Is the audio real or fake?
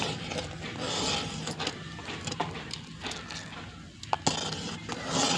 real